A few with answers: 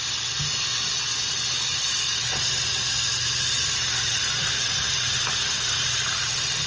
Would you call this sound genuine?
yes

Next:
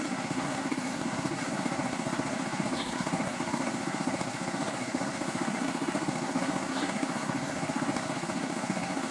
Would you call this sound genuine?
no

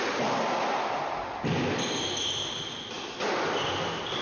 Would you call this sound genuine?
yes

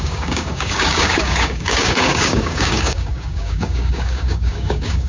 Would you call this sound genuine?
no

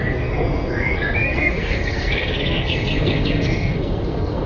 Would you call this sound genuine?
no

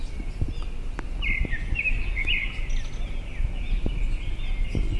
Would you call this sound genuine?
yes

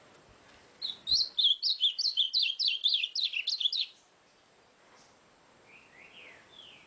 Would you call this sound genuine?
yes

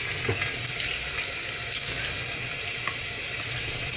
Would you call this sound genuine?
yes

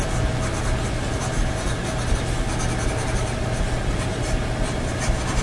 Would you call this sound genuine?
yes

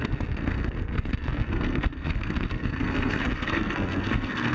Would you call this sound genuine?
no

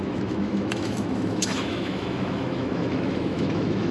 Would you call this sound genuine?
no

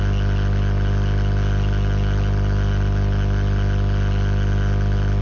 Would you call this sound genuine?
yes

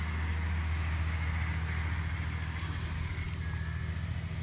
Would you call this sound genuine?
yes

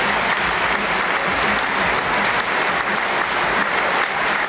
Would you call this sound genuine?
yes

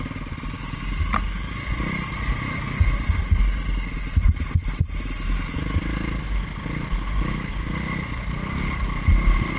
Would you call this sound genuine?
yes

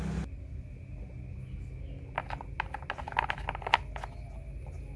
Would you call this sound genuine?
yes